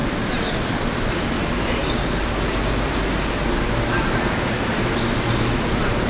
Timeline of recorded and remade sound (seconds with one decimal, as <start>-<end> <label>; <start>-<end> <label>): 0.0-6.1 recorded